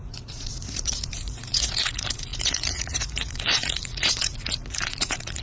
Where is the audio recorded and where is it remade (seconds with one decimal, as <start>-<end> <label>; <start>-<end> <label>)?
0.0-5.4 remade